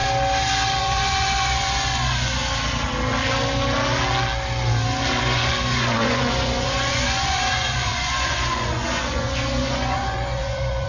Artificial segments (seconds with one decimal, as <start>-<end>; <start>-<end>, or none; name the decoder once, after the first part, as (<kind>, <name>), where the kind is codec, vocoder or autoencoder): 0.8-2.4 (vocoder, Vocos); 5.2-10.9